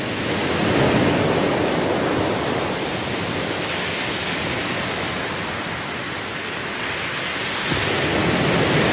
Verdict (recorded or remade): recorded